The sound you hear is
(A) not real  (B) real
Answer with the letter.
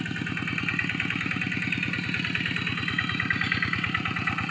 B